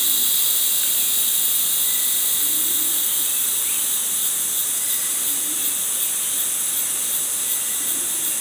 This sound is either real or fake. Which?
real